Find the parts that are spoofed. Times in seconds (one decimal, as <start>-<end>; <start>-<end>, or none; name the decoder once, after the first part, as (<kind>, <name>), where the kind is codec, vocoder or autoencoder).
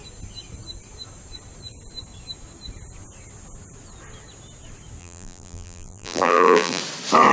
5.0-6.8 (vocoder, BigVGAN v2)